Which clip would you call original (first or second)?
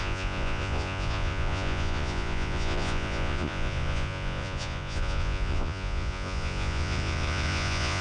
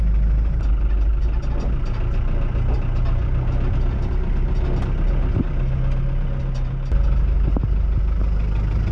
second